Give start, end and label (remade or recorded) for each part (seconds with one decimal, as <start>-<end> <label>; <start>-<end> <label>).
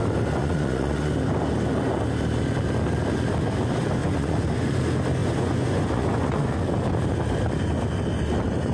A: 0.0-0.4 recorded; 0.4-1.1 remade; 1.1-4.0 recorded; 4.0-4.8 remade; 4.8-5.2 recorded; 5.2-6.6 remade; 6.6-8.7 recorded